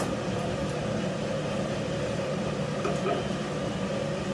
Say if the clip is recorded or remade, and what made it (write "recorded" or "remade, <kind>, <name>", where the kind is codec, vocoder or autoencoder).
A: recorded